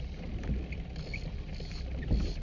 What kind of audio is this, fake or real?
real